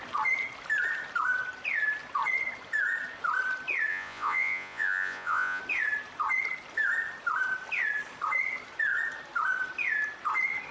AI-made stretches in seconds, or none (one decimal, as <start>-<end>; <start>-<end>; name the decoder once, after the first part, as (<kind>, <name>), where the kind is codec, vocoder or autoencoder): 3.9-5.6 (vocoder, Vocos)